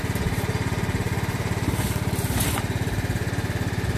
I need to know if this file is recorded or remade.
recorded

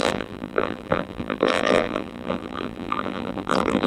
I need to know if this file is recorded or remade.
remade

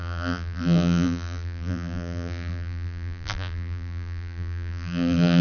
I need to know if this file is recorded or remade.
remade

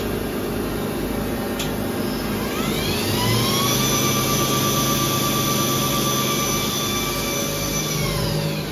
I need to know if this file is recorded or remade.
recorded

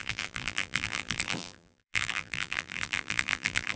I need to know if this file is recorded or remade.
remade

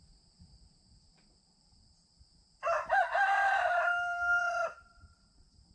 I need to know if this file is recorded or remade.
remade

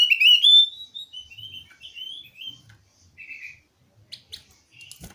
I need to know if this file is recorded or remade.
recorded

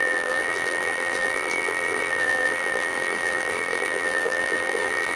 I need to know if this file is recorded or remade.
remade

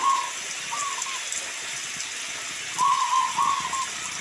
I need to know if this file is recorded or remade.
recorded